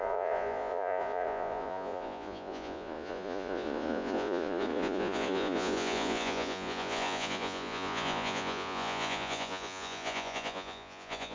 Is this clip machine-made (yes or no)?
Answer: yes